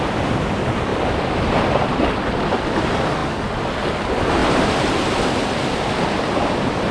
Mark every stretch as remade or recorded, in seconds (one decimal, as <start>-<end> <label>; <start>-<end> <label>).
0.0-0.9 recorded; 0.9-1.8 remade; 1.8-4.4 recorded; 4.4-6.4 remade; 6.4-6.9 recorded